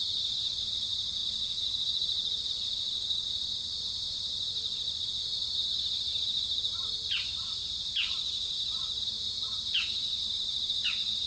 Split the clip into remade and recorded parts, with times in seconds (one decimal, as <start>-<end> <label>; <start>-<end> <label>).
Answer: 0.0-11.3 recorded